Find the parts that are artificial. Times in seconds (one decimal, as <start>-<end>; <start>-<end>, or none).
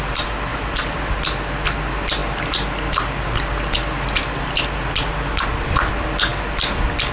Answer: 0.5-1.1